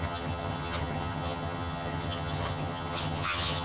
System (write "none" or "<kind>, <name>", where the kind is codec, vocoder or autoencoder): vocoder, HiFi-GAN